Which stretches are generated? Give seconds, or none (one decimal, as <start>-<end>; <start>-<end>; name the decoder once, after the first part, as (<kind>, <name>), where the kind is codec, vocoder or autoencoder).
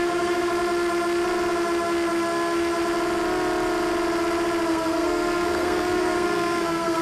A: 0.0-0.5 (codec, SNAC); 4.7-7.0